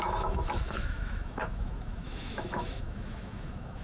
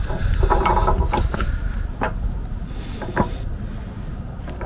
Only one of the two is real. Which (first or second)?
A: second